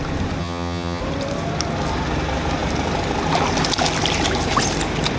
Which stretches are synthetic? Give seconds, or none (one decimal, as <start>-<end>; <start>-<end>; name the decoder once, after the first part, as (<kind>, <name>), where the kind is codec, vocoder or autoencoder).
0.4-1.0 (vocoder, HiFi-GAN)